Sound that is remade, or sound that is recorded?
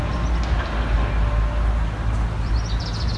recorded